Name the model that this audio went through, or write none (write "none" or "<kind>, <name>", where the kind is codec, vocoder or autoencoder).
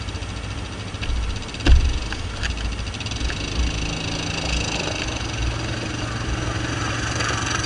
none